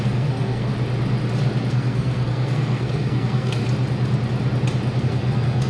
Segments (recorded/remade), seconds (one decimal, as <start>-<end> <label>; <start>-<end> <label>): 0.0-0.7 remade; 0.7-1.7 recorded; 1.7-3.6 remade; 3.6-5.0 recorded; 5.0-5.7 remade